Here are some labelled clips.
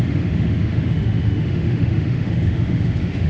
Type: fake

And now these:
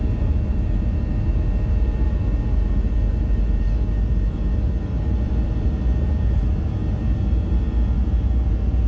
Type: fake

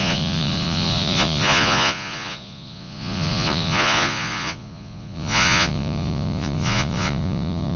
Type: fake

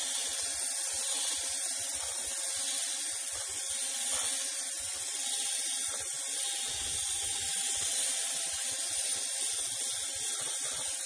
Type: real